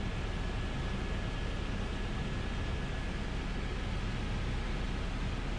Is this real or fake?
real